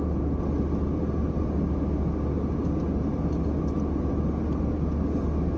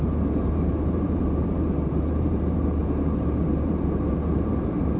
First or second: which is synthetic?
second